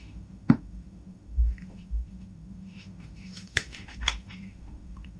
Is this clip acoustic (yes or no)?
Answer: no